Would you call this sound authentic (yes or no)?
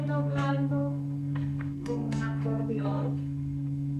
no